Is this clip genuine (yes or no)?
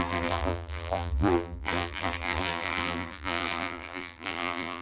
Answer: no